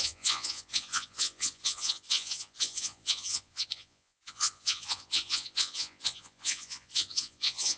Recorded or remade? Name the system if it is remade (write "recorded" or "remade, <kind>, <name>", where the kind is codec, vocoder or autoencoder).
remade, vocoder, Vocos